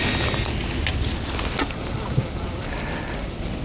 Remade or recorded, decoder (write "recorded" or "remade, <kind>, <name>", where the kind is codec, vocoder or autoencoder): recorded